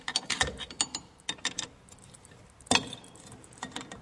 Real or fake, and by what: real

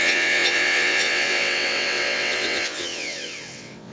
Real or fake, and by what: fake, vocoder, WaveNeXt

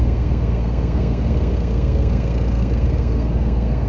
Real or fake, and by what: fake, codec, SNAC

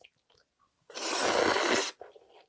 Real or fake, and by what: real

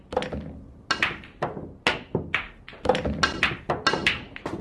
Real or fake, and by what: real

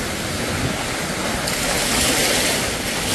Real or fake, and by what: real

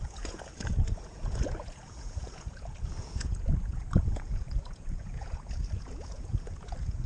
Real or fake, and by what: fake, vocoder, Vocos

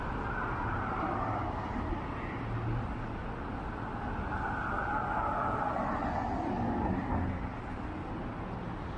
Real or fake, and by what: real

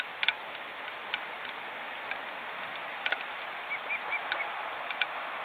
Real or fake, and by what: real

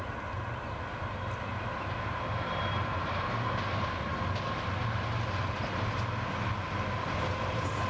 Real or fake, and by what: real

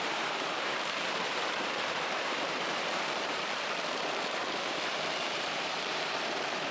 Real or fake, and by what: fake, vocoder, BigVGAN v2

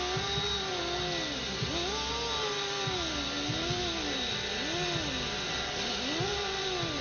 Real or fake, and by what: real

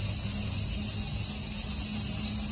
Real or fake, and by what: real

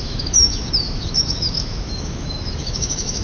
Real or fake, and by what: fake, autoencoder, DAC-VAE